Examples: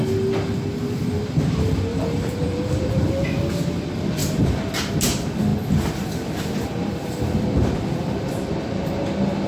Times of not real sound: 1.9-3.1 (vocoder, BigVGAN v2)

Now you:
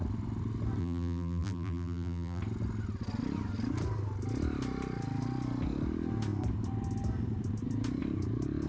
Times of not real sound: 0.8-2.4 (vocoder, BigVGAN v2)

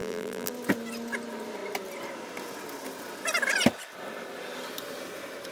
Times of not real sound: 0.0-0.5 (vocoder, BigVGAN v2)

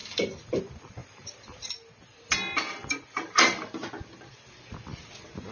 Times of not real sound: 0.0-0.6 (vocoder, BigVGAN v2)

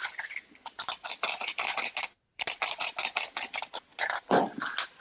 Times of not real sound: 2.3-2.9 (vocoder, BigVGAN v2); 3.9-4.5

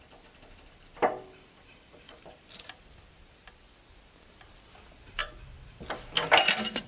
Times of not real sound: 0.0-5.2 (vocoder, BigVGAN v2); 6.3-6.9